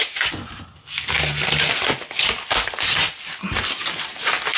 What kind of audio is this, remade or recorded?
recorded